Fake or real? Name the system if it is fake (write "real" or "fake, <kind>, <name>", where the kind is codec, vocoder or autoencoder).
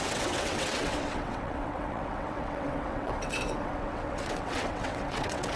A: fake, vocoder, WaveNeXt